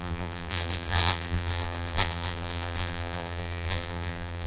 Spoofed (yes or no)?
yes